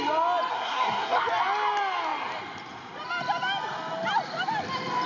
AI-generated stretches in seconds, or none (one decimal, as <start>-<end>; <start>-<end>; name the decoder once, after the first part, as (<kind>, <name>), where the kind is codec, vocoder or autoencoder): 0.5-1.2 (codec, SNAC)